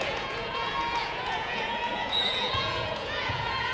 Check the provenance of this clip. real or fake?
fake